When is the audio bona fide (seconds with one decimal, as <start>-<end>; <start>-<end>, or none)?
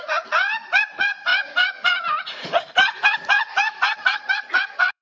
none